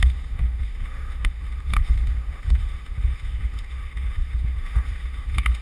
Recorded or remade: remade